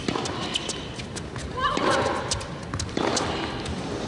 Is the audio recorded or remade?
recorded